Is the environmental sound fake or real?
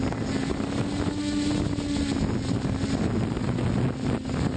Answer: real